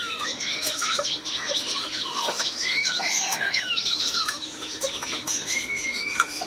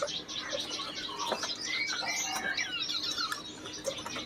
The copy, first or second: first